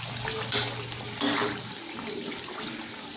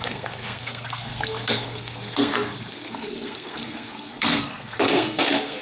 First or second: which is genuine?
first